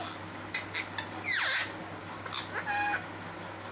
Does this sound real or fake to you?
real